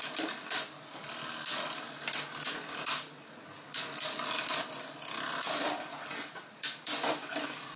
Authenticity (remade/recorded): recorded